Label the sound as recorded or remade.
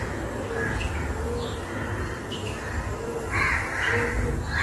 recorded